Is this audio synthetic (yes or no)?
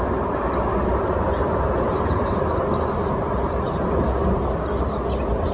no